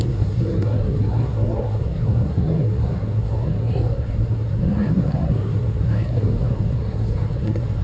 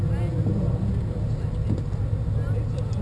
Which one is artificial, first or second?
first